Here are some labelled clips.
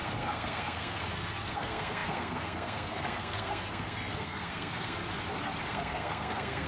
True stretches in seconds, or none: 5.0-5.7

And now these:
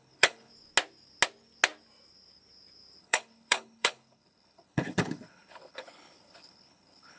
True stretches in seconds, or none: 0.5-3.0

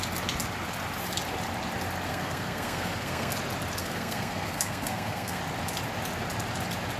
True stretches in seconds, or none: 0.0-2.1; 3.3-3.8; 5.4-7.0

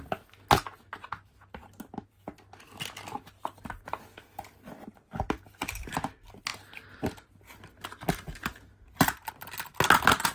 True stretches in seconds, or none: 0.0-10.3

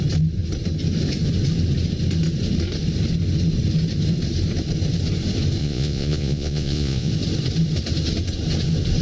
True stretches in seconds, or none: 0.0-5.6; 7.1-9.0

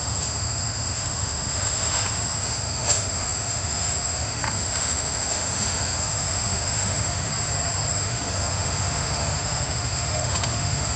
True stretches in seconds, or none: 7.3-7.9

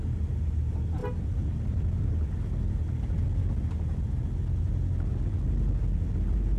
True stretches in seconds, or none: 0.0-6.6